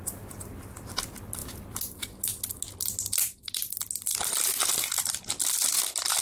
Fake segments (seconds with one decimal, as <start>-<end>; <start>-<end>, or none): none